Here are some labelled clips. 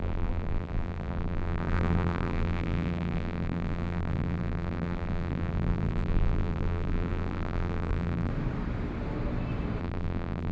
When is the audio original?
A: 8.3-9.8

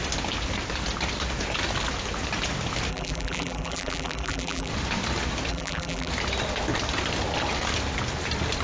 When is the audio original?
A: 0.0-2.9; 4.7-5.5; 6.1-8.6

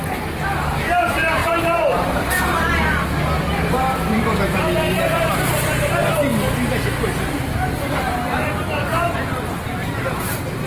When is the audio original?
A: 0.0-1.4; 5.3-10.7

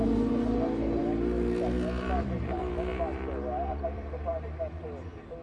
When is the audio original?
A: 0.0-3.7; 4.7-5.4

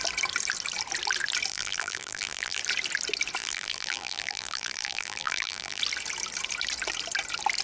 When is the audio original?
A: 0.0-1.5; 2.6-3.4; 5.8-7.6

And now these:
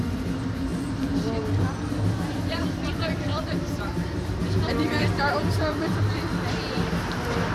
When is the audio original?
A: 6.3-7.5